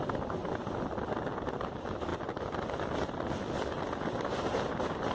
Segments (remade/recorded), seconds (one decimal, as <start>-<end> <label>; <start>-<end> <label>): 0.0-5.1 recorded